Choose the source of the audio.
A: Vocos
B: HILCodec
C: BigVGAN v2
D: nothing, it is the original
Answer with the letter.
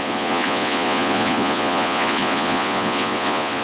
A